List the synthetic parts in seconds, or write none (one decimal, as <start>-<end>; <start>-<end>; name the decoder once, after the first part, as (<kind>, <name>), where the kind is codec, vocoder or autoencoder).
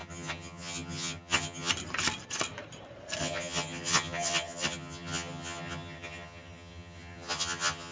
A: 0.0-1.7 (vocoder, HiFi-GAN); 3.2-7.9